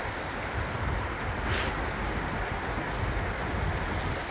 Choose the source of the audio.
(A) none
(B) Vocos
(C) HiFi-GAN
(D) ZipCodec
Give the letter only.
A